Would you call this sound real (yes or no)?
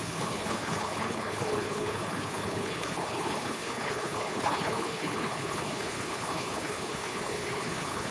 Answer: no